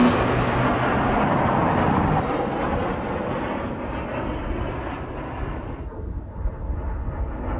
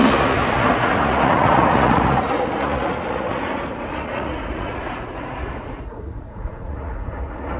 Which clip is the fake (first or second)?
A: second